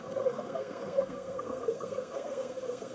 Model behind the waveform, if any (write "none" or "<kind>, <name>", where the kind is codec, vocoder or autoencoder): codec, SNAC